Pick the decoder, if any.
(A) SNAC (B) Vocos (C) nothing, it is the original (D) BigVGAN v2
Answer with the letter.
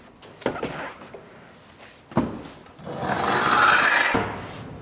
C